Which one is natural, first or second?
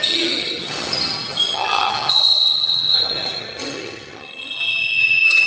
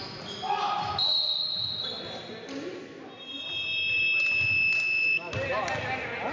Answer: second